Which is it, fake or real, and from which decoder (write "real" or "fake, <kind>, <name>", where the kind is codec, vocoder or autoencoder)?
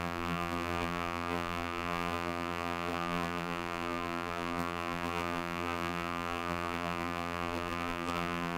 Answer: fake, vocoder, BigVGAN v2